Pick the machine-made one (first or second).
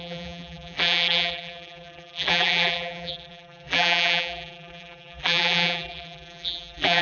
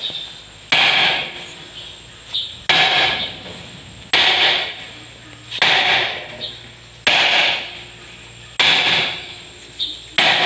first